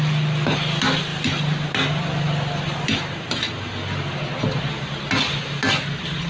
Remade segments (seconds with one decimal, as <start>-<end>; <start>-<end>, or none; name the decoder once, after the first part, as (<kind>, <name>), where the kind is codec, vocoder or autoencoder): none